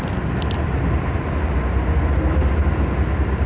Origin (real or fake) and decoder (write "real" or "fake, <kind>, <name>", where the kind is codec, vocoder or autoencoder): real